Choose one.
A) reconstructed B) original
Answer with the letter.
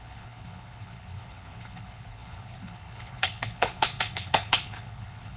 A